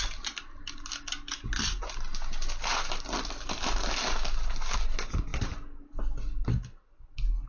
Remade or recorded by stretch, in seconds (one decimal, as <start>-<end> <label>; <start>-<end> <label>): 0.0-7.5 recorded